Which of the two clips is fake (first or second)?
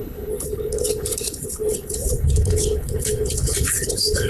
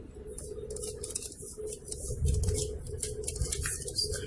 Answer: first